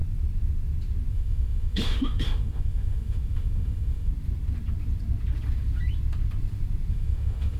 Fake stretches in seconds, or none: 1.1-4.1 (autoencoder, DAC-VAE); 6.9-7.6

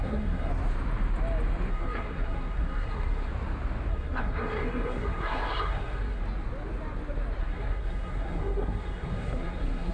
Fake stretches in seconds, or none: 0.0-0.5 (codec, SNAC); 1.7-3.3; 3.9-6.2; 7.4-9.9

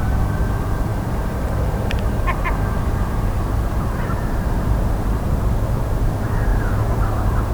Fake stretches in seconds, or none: 0.9-5.4 (vocoder, BigVGAN v2); 6.5-7.5

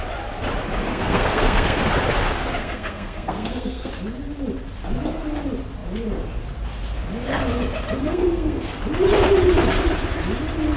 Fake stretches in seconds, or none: 0.9-1.8 (codec, SNAC); 2.6-3.9; 8.0-8.8

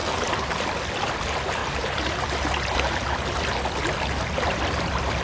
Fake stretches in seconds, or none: 0.0-0.5 (vocoder, BigVGAN v2); 1.6-3.4